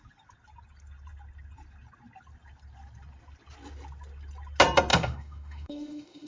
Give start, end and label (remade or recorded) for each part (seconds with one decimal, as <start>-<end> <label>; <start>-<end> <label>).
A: 0.0-4.9 recorded; 4.9-6.3 remade